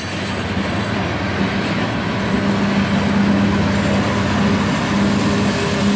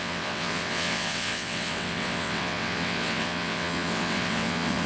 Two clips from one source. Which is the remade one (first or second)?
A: second